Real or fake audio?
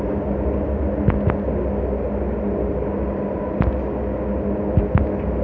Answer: real